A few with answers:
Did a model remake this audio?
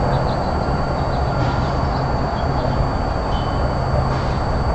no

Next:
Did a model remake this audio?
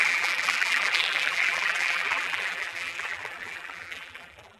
yes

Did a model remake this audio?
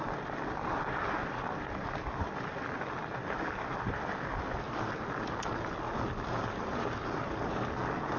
no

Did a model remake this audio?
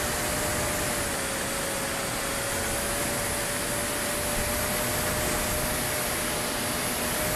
no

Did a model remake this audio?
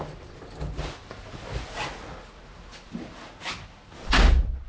no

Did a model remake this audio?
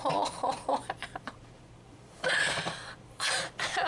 yes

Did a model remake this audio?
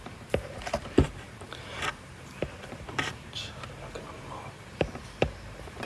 yes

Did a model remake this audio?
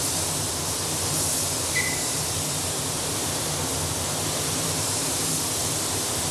yes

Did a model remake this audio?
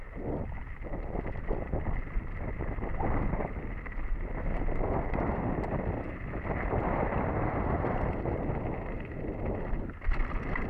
no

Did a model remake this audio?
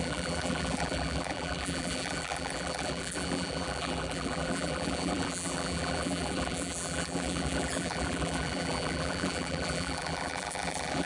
yes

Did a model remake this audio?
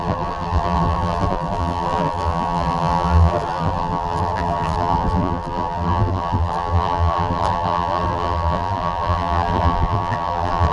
yes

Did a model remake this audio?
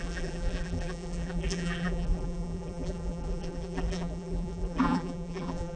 yes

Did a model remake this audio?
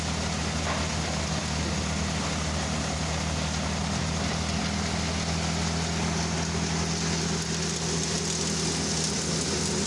no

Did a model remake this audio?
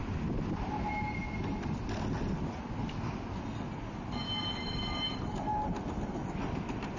no